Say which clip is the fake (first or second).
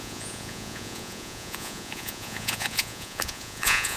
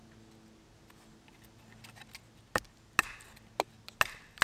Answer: first